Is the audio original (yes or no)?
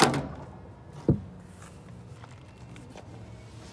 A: yes